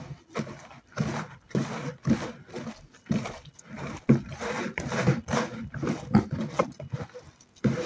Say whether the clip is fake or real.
real